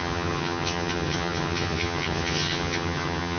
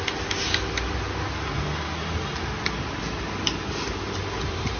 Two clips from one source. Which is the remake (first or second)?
first